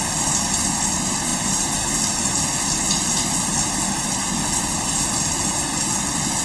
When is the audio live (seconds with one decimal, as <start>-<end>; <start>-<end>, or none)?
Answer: 0.0-6.4